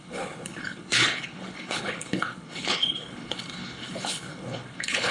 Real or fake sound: fake